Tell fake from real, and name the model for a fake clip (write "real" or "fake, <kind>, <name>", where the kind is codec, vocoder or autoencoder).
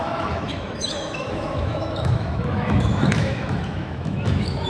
fake, autoencoder, DAC-VAE